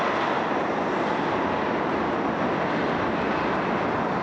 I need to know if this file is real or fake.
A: real